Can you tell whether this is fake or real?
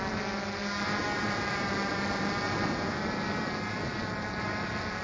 real